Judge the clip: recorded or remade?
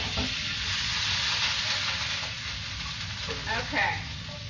recorded